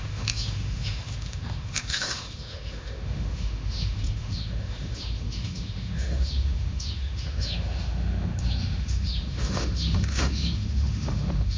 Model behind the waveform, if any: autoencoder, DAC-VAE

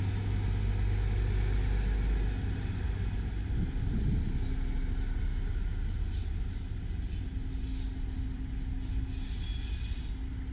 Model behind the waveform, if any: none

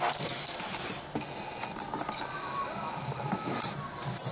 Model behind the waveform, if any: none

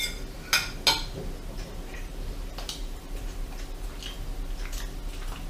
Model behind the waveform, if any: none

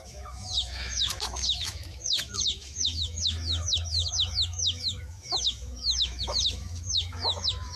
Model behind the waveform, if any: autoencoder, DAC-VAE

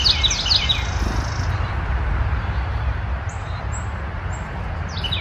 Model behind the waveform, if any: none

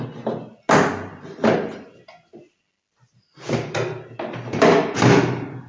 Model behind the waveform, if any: none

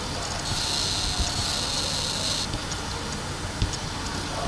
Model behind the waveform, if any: none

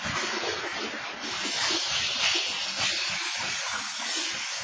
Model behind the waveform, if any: none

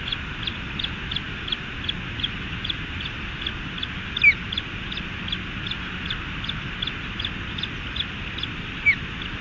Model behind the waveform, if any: none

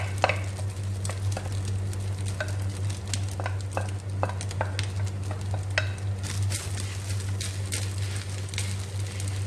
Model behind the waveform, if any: none